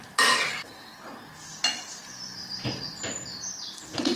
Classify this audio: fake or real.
real